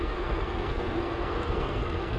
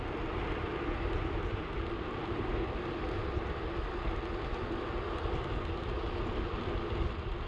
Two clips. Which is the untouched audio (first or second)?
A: second